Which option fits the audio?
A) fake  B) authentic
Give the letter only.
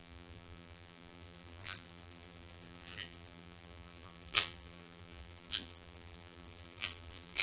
A